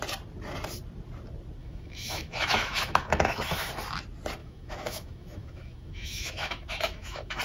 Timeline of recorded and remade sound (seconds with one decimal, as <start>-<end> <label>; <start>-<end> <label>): 0.0-1.6 recorded; 1.6-3.7 remade; 3.7-4.4 recorded; 4.4-7.4 remade